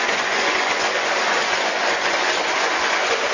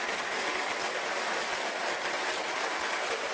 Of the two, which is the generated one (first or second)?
first